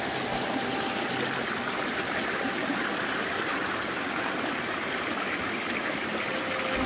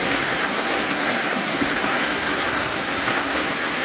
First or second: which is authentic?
first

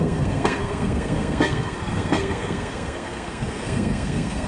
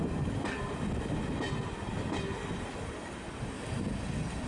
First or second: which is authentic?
second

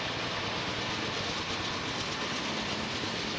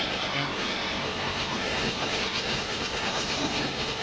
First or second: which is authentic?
first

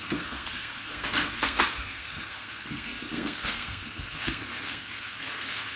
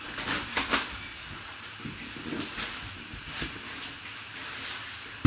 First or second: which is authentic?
second